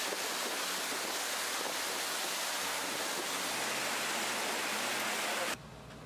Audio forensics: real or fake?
real